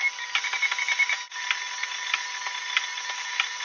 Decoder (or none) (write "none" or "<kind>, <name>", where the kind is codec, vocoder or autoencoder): none